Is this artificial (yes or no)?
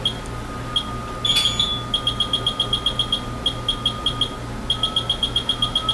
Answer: no